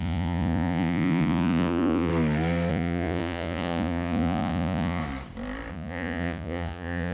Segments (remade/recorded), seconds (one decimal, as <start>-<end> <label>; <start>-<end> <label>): 0.0-2.1 remade; 2.1-2.7 recorded; 2.7-5.0 remade; 5.0-5.7 recorded; 5.7-7.1 remade

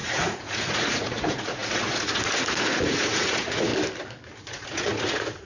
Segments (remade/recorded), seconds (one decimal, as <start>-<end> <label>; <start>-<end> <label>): 0.0-3.7 remade; 3.7-4.4 recorded; 4.4-5.5 remade

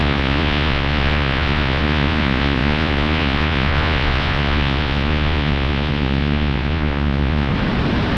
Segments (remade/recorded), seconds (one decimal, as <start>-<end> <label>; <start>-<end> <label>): 0.0-7.5 remade; 7.5-8.2 recorded

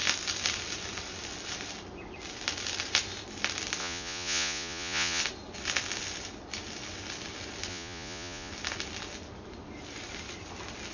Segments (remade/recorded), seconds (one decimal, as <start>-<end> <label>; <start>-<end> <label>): 0.0-3.8 recorded; 3.8-5.2 remade; 5.2-7.7 recorded; 7.7-8.5 remade; 8.5-10.9 recorded

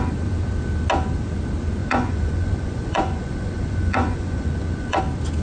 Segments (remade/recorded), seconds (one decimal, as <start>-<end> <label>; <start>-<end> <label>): 0.0-1.8 recorded; 1.8-5.0 remade; 5.0-5.4 recorded

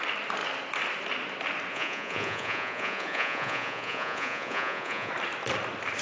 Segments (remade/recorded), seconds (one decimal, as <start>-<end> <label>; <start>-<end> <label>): 0.0-1.7 recorded; 1.7-5.1 remade; 5.1-6.0 recorded

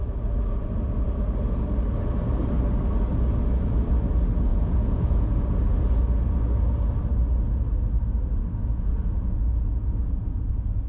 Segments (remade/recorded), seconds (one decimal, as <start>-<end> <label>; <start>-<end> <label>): 0.0-4.5 recorded; 4.5-5.4 remade; 5.4-8.6 recorded; 8.6-10.5 remade; 10.5-10.9 recorded

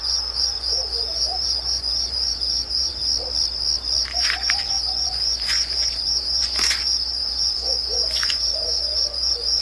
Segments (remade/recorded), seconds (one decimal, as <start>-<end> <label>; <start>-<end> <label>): 0.0-3.0 remade; 3.0-4.0 recorded; 4.0-9.6 remade